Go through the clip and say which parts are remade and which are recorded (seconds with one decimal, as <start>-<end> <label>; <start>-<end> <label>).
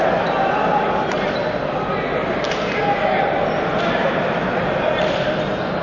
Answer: 0.0-5.8 recorded